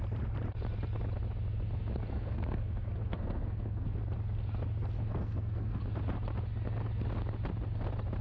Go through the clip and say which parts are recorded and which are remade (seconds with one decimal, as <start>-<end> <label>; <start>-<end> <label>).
0.0-2.1 recorded; 2.1-4.0 remade; 4.0-5.0 recorded; 5.0-5.8 remade; 5.8-8.2 recorded